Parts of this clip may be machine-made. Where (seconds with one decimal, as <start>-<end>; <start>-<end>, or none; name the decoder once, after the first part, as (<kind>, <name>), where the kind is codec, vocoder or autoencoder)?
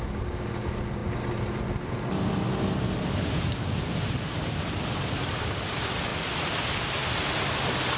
none